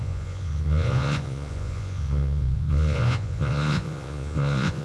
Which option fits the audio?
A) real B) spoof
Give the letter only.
B